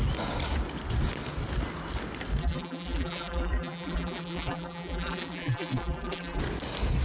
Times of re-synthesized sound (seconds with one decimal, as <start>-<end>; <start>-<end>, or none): 2.4-6.4